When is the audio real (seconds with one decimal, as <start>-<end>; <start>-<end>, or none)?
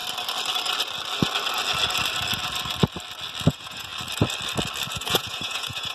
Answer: 0.0-3.5; 3.9-4.9